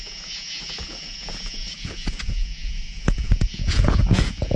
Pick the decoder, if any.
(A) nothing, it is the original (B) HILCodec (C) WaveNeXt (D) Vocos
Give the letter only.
D